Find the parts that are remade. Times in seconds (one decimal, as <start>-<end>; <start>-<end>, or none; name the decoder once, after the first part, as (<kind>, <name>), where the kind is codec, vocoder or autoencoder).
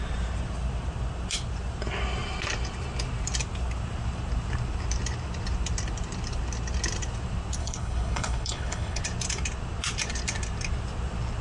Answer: 7.6-9.0 (codec, HILCodec)